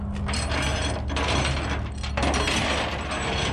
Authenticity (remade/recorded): recorded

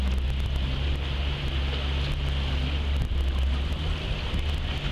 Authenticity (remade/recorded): recorded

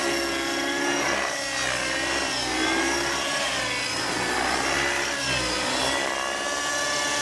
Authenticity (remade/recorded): recorded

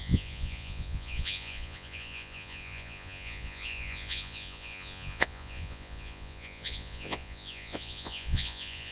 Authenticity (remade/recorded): remade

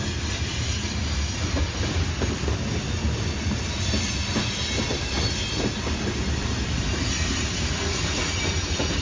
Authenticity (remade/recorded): recorded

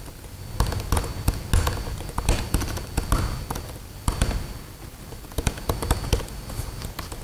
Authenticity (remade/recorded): recorded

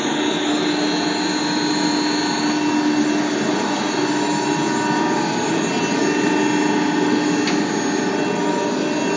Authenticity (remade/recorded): recorded